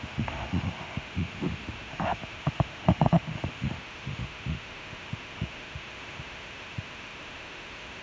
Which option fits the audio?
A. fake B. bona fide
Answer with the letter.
A